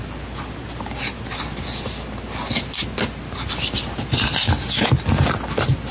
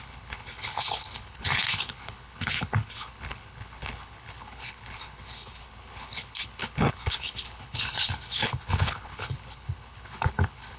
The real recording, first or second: first